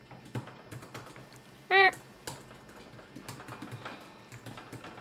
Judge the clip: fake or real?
real